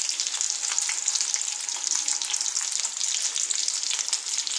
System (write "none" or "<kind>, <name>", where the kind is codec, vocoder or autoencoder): none